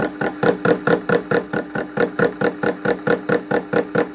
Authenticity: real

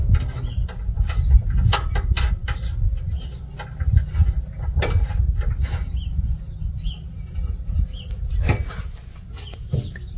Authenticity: real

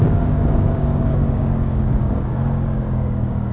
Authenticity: fake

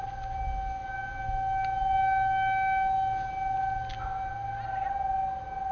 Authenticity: real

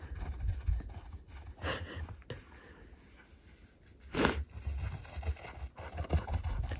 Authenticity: real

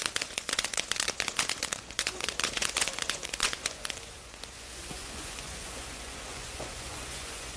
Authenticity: fake